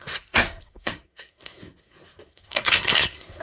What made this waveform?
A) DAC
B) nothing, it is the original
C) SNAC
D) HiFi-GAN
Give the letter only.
C